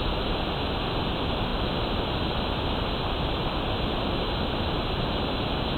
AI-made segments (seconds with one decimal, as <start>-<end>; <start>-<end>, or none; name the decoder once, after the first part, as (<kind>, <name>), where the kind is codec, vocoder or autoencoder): none